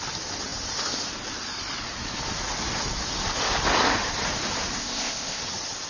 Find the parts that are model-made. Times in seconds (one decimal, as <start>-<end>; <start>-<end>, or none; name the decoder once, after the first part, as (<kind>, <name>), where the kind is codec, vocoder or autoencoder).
4.8-5.4 (codec, ZipCodec)